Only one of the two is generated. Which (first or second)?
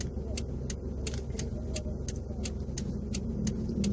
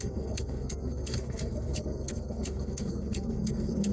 second